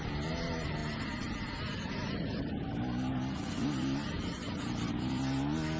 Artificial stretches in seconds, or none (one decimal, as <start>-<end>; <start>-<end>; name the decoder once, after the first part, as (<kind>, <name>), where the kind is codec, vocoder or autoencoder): none